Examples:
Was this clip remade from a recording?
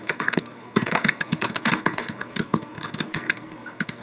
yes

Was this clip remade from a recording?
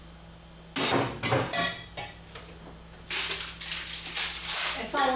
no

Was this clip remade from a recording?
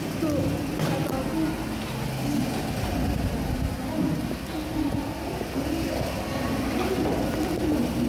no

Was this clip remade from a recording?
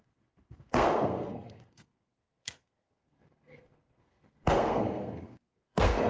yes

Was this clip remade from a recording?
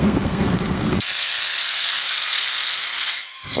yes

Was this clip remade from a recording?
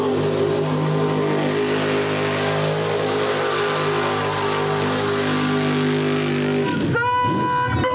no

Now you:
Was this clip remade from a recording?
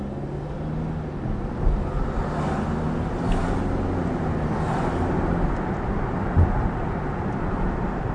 no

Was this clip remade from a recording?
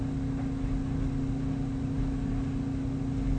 no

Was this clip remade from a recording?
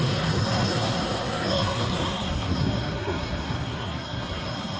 yes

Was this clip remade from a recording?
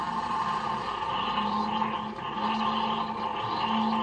no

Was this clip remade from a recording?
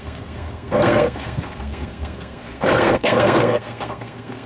yes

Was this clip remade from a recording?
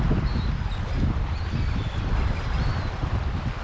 no